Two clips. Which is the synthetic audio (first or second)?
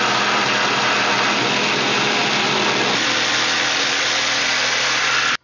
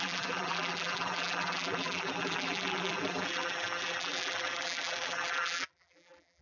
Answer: second